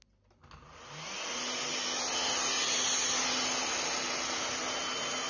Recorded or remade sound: recorded